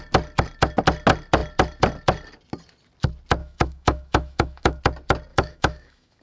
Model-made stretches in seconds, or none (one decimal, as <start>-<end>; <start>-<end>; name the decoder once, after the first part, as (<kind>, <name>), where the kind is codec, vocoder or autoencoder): 3.4-4.8 (autoencoder, DAC-VAE); 5.3-6.2